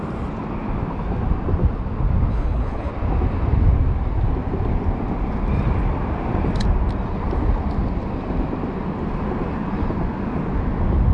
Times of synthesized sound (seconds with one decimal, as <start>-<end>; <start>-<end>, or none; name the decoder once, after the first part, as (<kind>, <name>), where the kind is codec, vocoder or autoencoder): 2.3-2.9 (codec, HILCodec)